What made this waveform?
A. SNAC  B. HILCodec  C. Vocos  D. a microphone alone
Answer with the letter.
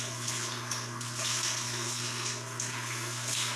A